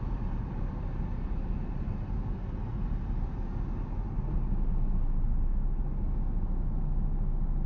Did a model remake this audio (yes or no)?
no